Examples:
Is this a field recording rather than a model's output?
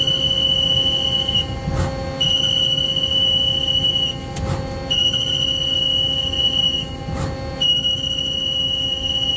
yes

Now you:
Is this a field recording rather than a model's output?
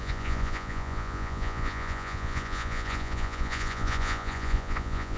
no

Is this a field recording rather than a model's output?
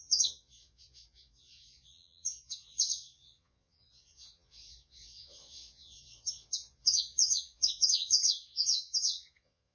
no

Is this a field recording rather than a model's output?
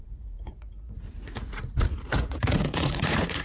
no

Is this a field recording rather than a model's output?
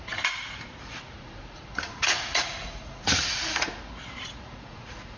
no